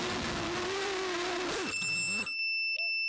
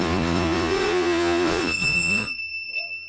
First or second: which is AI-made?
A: second